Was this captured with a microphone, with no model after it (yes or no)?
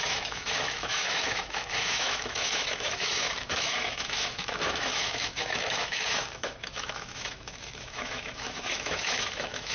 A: no